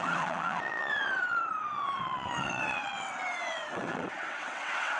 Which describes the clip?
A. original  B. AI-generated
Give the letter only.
B